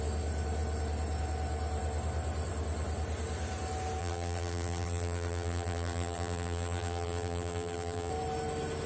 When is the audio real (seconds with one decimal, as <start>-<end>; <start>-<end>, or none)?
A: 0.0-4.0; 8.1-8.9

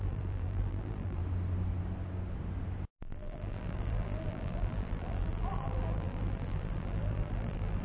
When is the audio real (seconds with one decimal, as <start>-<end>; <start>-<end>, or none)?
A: 1.2-3.0

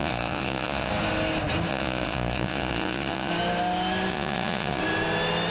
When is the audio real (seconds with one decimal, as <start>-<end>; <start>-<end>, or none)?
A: 0.9-1.7; 3.3-4.1; 4.8-5.5

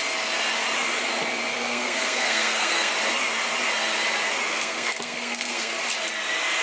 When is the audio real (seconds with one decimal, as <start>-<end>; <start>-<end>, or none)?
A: 0.0-1.5; 2.9-4.5; 5.8-6.6

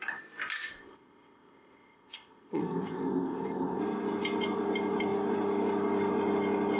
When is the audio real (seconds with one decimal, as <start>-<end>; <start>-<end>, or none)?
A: 0.0-0.7; 3.8-6.8

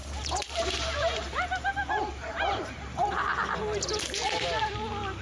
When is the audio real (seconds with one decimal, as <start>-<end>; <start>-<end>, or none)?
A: 3.1-5.2